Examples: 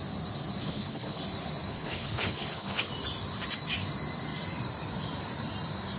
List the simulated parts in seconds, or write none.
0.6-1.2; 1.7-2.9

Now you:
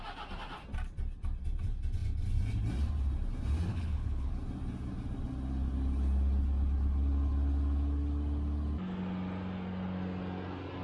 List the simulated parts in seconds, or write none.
3.7-4.3

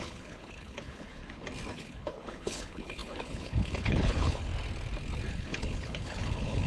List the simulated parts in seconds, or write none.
0.0-1.2; 1.7-4.5; 5.3-6.7

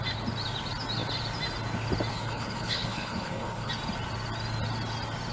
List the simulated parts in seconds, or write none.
2.1-3.7

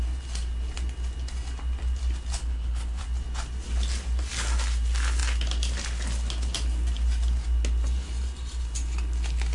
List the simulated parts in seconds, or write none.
2.4-3.0

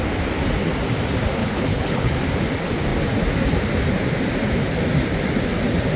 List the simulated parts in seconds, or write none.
1.4-2.2

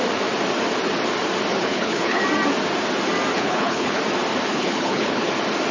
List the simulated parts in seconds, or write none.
1.5-2.2; 3.3-4.0; 4.5-5.3

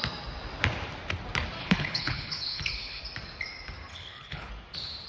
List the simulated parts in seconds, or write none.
1.6-3.0; 3.9-4.5